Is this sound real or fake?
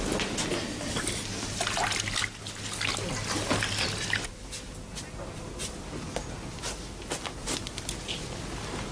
real